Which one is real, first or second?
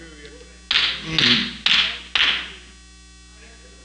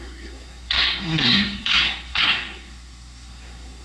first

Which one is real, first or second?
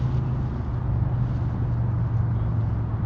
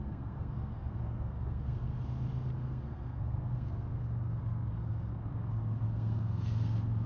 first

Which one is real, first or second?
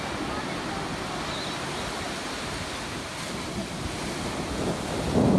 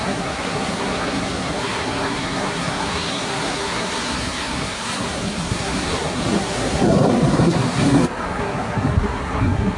first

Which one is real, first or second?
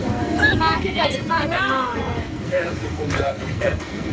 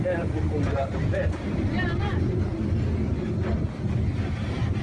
second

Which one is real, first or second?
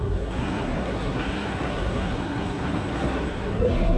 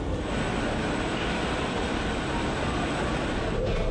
second